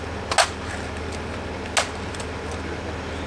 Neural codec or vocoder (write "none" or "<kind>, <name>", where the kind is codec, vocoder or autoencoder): none